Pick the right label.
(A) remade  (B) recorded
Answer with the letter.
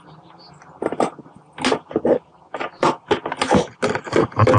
B